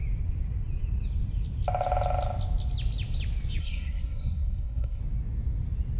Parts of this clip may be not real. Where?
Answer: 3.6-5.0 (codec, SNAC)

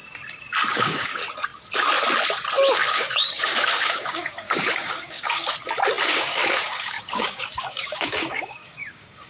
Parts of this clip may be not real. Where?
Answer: 0.7-1.2 (codec, DAC); 2.9-5.5; 6.0-9.3

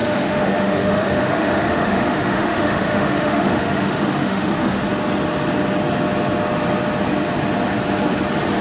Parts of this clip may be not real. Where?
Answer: 0.0-4.8 (autoencoder, DAC-VAE)

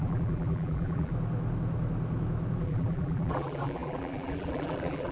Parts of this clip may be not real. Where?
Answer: 0.0-1.1 (vocoder, BigVGAN v2); 2.6-5.1

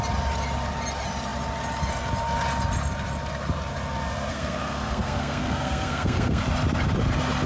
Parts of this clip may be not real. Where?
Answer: 4.3-6.4 (codec, SNAC)

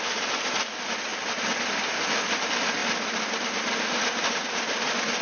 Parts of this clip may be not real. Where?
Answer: none